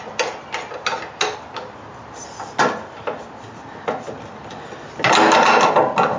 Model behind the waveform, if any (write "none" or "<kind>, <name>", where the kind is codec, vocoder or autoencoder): none